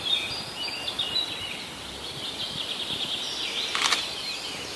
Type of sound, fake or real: real